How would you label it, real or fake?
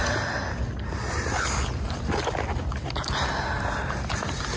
real